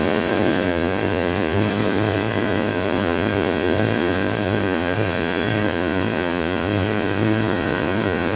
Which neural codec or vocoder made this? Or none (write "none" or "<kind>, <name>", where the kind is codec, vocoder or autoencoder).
vocoder, Vocos